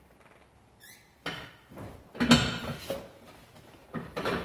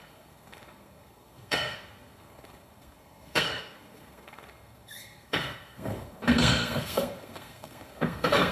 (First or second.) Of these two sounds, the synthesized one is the second